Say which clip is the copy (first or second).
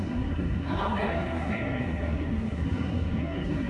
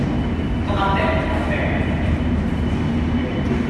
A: first